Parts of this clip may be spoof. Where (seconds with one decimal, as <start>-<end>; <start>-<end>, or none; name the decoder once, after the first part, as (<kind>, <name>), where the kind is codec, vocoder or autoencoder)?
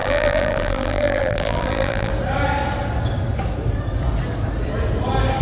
0.0-2.1 (vocoder, BigVGAN v2)